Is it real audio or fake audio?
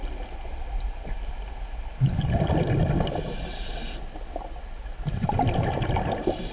real